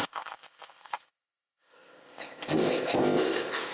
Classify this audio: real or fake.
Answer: fake